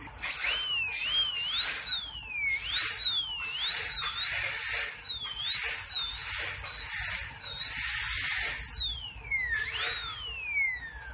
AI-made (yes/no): no